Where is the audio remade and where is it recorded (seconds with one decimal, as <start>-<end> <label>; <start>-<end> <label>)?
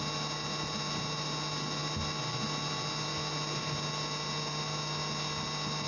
0.0-5.9 recorded